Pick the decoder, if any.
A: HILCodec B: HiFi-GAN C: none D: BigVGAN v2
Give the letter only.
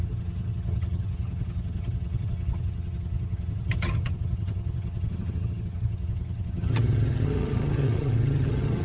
B